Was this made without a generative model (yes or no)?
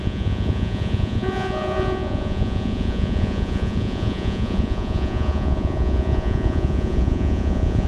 no